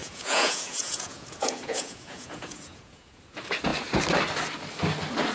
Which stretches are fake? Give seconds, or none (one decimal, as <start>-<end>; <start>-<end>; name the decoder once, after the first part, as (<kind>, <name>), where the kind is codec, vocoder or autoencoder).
0.0-3.2 (vocoder, Vocos)